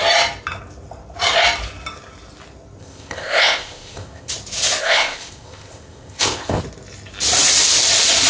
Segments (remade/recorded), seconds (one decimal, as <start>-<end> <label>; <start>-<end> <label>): 0.0-2.8 recorded; 2.8-4.3 remade; 4.3-4.8 recorded; 4.8-6.6 remade; 6.6-8.3 recorded